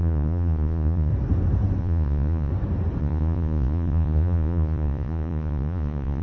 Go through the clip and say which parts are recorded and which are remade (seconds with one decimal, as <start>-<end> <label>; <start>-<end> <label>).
0.0-1.1 remade; 1.1-1.8 recorded; 1.8-2.5 remade; 2.5-3.0 recorded; 3.0-6.2 remade